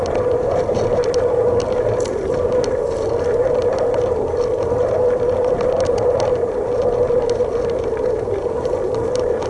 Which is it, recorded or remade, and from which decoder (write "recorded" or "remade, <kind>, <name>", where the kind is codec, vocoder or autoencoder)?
recorded